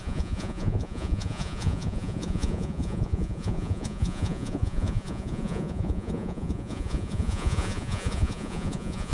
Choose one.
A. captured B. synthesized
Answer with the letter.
B